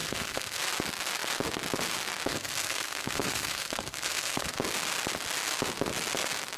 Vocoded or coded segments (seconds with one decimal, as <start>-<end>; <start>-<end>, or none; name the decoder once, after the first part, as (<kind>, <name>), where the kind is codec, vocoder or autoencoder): 0.0-0.6 (codec, SNAC); 2.3-4.5